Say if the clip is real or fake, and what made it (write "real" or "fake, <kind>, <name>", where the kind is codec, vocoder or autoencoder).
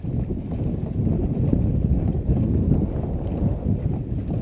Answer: real